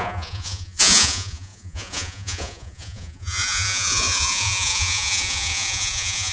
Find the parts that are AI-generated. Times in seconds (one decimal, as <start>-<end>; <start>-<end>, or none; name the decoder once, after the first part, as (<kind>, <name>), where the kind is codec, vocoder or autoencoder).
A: 0.0-6.3 (vocoder, Vocos)